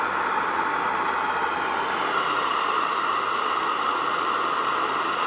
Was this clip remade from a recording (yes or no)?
no